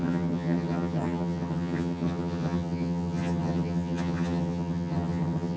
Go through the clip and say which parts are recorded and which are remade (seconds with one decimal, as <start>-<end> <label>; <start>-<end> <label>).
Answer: 0.0-5.6 remade